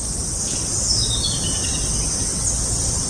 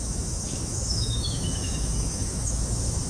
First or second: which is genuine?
first